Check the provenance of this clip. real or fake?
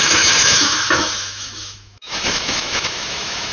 fake